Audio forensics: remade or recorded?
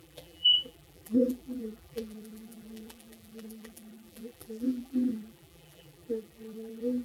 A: remade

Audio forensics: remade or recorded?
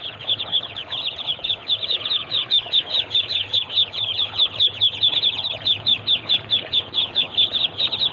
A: remade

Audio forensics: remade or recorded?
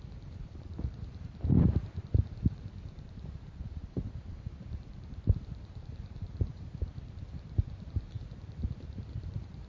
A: remade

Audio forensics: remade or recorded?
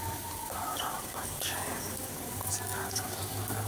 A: remade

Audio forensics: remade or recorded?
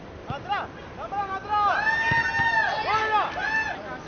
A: recorded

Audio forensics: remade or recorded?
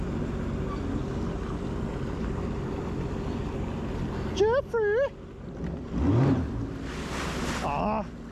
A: recorded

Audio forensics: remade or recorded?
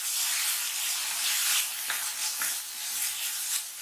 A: recorded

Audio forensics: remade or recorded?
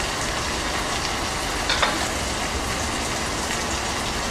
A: recorded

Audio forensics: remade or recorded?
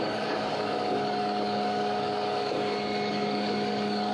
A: remade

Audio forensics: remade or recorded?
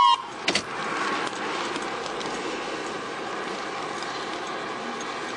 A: recorded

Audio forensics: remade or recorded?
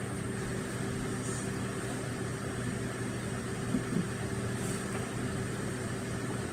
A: recorded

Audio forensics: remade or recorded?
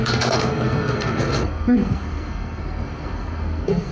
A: remade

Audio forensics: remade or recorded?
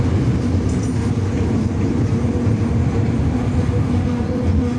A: recorded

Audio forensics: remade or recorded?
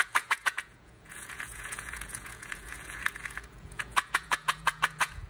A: remade